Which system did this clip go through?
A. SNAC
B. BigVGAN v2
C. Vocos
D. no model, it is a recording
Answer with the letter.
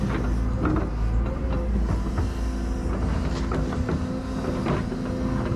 D